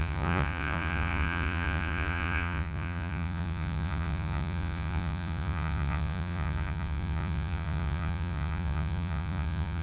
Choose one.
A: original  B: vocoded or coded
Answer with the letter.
B